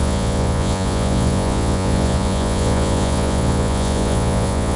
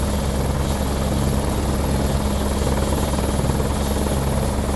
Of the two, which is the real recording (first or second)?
second